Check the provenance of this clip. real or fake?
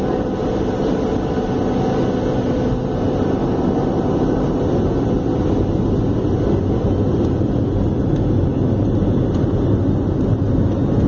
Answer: real